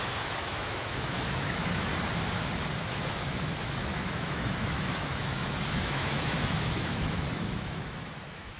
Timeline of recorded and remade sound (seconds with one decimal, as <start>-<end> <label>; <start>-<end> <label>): 0.0-1.9 remade; 1.9-2.9 recorded; 2.9-8.6 remade